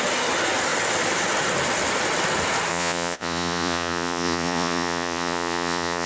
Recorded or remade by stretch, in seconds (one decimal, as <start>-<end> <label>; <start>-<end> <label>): 0.0-2.7 recorded; 2.7-6.1 remade